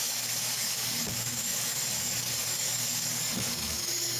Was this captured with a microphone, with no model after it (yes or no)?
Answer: no